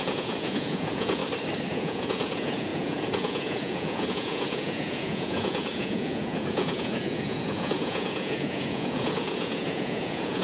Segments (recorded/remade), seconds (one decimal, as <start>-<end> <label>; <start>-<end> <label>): 0.0-1.2 remade; 1.2-1.7 recorded; 1.7-10.4 remade